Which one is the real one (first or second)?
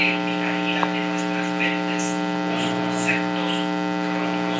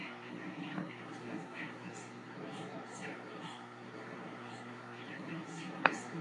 first